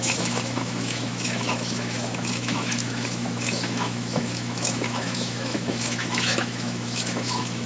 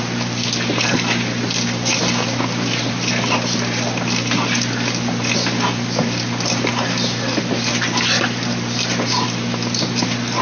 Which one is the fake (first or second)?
first